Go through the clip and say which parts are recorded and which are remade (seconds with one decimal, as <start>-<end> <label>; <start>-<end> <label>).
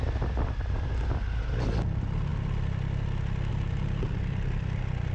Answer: 0.0-5.1 recorded